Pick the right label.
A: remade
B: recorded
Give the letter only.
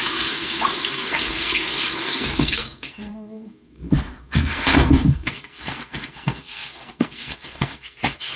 A